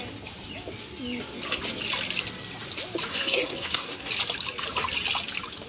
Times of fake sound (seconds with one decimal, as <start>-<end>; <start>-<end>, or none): 3.1-4.1